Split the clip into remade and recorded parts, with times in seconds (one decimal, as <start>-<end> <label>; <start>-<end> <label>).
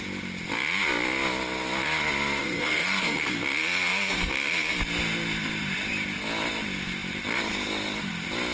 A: 0.0-2.4 recorded; 2.4-3.4 remade; 3.4-8.5 recorded